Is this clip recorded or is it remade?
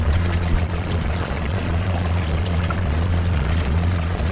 remade